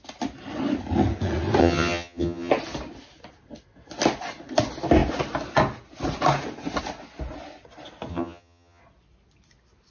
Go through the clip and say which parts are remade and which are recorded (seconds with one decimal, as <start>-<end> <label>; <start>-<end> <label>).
0.0-1.6 recorded; 1.6-2.5 remade; 2.5-8.1 recorded; 8.1-8.8 remade; 8.8-9.9 recorded

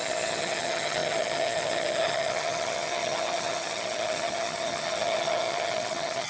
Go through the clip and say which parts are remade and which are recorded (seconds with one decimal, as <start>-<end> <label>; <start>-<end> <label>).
0.0-6.3 remade

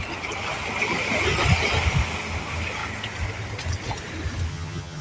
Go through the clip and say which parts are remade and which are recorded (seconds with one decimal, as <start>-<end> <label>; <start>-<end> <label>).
0.0-4.5 recorded; 4.5-5.0 remade